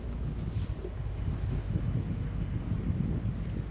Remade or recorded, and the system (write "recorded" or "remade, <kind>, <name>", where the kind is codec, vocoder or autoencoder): recorded